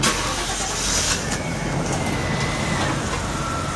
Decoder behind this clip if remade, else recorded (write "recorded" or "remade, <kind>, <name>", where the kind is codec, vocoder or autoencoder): recorded